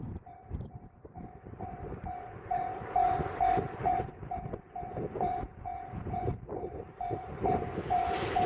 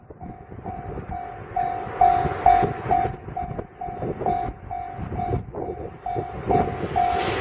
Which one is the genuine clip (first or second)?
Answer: second